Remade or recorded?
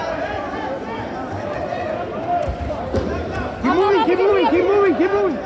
remade